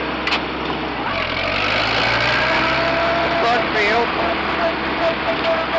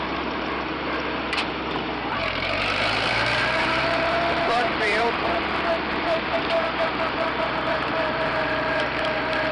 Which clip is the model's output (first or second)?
second